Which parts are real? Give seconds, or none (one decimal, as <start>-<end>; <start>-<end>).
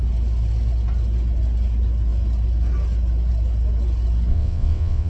0.0-4.3